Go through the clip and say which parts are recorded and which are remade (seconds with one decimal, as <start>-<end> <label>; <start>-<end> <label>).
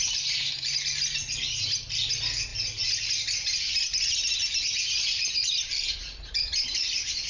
0.0-7.3 recorded